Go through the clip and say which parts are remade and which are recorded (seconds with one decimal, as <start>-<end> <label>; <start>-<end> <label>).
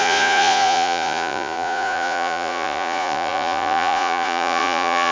0.0-5.1 remade